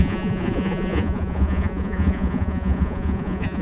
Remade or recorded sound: remade